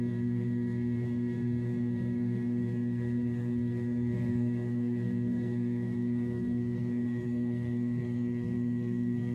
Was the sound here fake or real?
fake